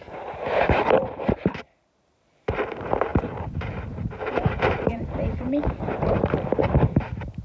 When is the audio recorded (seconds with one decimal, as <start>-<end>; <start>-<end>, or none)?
none